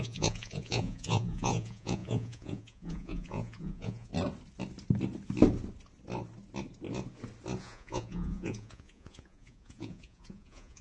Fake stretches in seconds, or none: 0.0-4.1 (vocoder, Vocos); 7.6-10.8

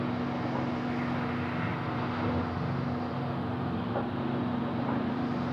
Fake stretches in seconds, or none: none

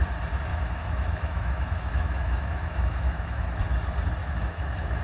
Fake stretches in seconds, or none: 0.5-3.4 (autoencoder, DAC-VAE); 4.2-5.0